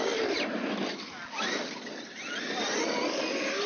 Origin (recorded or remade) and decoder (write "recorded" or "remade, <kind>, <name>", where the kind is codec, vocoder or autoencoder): recorded